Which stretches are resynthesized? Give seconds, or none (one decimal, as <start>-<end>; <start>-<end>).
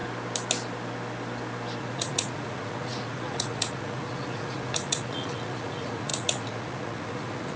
1.8-7.6